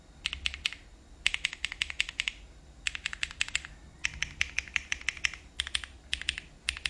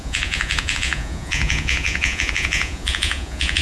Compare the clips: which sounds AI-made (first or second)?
second